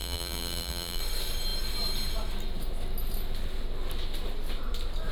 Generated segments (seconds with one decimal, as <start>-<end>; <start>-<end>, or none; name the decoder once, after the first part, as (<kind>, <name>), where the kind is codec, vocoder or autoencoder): 0.0-1.0 (vocoder, BigVGAN v2)